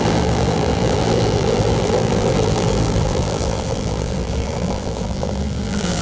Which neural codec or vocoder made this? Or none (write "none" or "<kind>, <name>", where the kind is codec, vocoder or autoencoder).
vocoder, BigVGAN v2